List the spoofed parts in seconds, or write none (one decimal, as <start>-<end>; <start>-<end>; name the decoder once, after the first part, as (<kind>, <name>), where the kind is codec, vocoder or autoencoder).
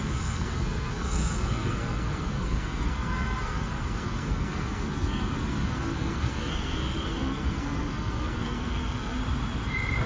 0.0-9.2 (codec, SNAC)